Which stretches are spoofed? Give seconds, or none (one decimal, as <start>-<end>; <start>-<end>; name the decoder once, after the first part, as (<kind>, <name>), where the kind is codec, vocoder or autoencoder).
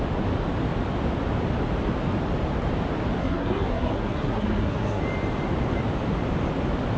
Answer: 3.2-5.0 (codec, SNAC)